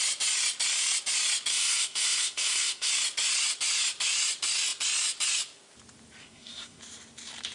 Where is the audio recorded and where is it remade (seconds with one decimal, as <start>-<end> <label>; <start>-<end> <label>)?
0.0-1.5 recorded; 1.5-2.9 remade; 2.9-6.2 recorded; 6.2-6.8 remade; 6.8-7.5 recorded